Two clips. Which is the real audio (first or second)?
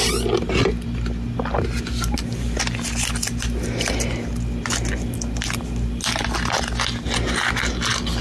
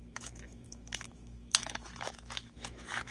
first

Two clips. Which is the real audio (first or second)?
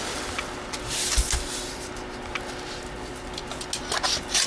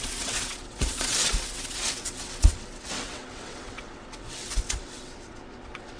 first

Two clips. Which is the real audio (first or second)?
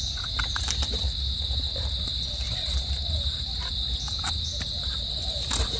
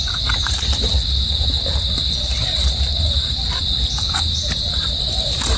first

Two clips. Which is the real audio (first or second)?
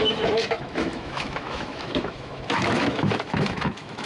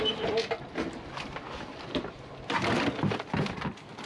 second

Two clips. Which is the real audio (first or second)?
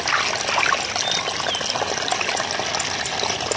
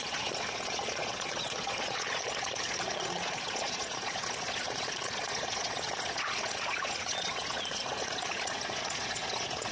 first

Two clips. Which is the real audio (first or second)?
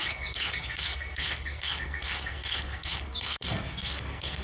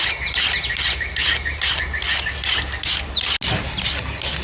second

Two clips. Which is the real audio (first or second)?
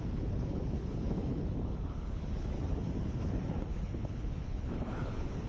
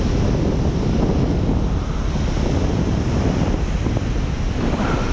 second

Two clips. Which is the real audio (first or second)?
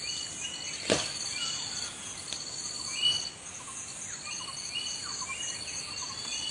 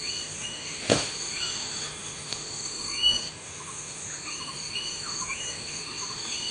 first